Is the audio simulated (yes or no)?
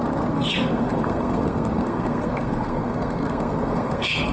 yes